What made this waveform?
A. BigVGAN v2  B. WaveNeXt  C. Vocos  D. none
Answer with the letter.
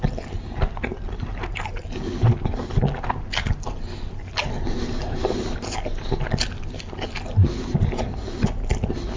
D